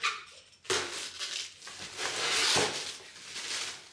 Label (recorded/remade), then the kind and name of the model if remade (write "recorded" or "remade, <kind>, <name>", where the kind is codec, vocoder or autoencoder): recorded